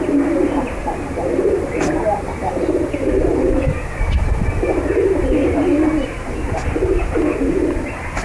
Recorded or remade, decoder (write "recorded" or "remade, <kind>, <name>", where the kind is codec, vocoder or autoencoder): remade, vocoder, BigVGAN v2